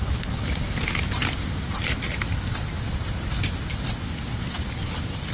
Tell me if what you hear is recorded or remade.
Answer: recorded